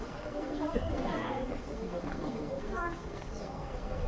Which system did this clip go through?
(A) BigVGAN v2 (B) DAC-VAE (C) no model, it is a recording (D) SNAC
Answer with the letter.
D